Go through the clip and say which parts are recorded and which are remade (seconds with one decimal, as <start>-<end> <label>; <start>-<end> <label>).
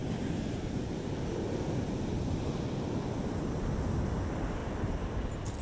0.0-5.6 recorded